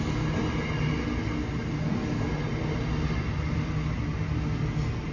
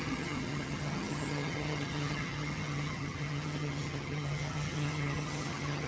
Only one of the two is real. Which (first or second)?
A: first